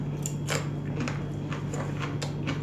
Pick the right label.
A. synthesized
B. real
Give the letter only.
B